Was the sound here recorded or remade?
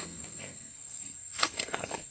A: remade